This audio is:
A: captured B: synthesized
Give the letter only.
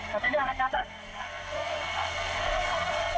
B